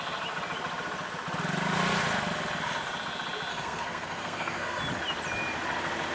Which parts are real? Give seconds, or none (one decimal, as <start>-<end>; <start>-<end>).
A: 0.0-3.5; 4.8-6.1